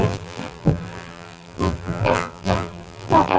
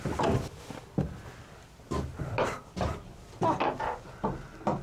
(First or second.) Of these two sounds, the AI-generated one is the first